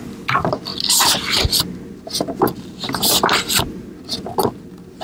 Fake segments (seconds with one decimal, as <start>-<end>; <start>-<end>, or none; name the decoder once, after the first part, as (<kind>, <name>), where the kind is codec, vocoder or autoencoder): none

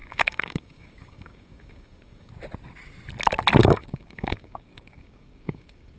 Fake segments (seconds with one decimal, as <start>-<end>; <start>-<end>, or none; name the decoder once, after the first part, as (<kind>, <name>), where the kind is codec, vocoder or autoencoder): 0.0-2.3 (codec, DAC); 3.6-6.0

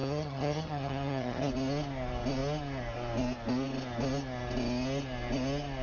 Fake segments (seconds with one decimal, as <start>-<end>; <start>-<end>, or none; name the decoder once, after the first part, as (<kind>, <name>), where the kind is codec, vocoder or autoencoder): 0.0-1.5 (vocoder, HiFi-GAN)

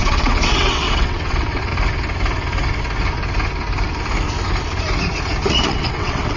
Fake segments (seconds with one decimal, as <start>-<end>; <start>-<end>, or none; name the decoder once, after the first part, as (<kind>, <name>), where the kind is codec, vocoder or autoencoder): 0.0-1.7 (vocoder, WaveNeXt); 5.5-6.4